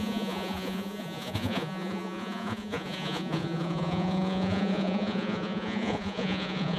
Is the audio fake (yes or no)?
yes